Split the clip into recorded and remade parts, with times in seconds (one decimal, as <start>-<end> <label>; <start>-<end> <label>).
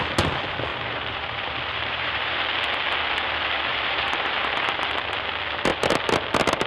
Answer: 0.0-0.7 recorded; 0.7-2.4 remade; 2.4-3.7 recorded; 3.7-4.8 remade; 4.8-6.7 recorded